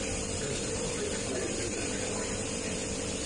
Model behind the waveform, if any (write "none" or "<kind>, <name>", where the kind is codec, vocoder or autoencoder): vocoder, BigVGAN v2